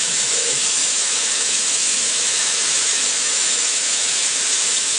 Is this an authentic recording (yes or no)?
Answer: no